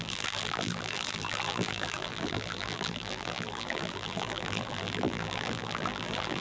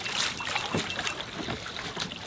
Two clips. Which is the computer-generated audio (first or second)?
first